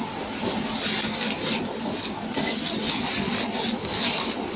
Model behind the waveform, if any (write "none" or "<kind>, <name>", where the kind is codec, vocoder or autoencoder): none